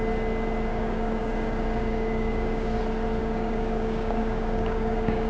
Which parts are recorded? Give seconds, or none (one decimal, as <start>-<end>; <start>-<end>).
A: 0.0-0.7; 2.8-3.2